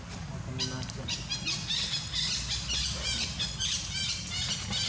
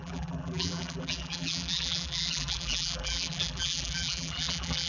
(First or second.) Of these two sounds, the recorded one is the first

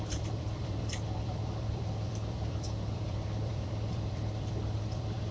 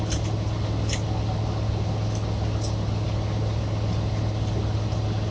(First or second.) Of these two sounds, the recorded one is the second